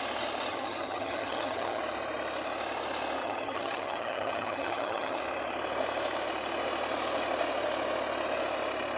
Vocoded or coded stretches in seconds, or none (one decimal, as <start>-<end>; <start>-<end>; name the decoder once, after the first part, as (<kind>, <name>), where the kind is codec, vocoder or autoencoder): 0.5-1.8 (vocoder, HiFi-GAN); 3.2-5.2